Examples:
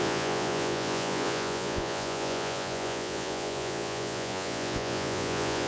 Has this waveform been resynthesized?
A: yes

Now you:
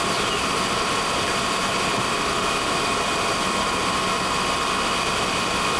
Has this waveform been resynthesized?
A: no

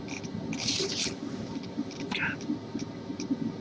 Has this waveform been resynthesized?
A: no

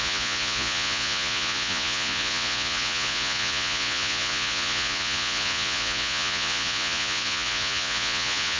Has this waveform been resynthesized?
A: yes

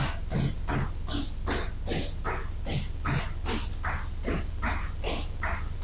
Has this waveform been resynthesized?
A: no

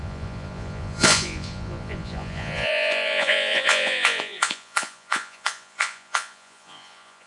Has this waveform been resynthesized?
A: yes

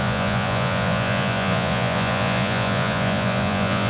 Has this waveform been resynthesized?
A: yes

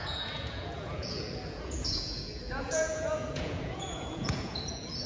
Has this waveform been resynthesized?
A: yes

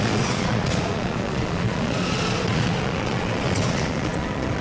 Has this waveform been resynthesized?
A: yes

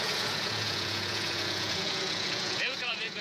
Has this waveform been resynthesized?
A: yes